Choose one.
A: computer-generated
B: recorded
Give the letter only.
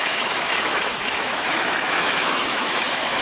A